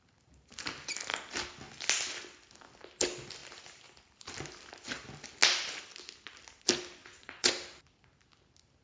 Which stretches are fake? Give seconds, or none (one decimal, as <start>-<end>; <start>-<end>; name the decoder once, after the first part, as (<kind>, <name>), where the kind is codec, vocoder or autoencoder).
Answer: 7.0-7.5 (vocoder, WaveNeXt)